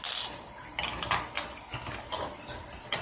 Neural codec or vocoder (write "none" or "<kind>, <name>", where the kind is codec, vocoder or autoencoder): none